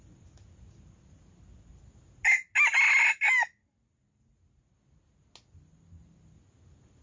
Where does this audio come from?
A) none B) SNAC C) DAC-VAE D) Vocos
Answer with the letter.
A